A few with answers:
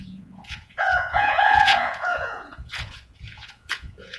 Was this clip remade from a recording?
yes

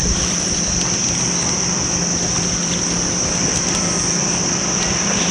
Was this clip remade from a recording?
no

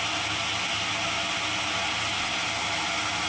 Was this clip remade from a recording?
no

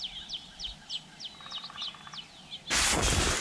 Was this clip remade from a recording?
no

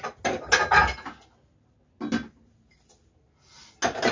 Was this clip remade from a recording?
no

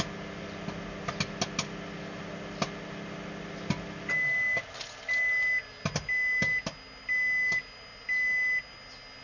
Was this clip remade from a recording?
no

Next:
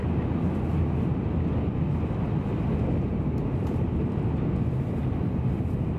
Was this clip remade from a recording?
no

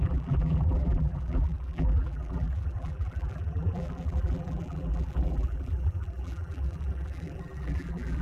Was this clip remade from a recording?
yes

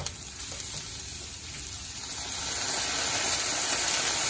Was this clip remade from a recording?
no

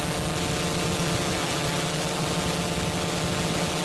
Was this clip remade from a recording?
no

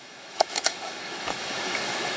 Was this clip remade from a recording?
yes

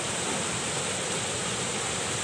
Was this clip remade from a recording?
no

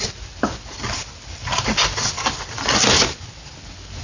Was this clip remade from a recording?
no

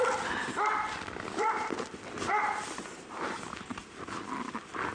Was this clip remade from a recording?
no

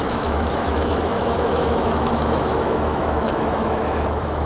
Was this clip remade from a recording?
yes